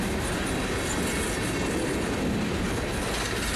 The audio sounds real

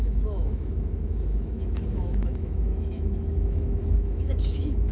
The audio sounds fake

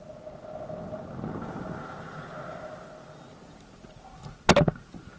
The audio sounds real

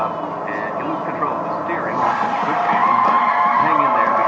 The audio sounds real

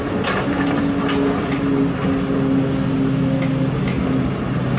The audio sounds real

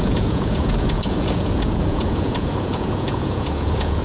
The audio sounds fake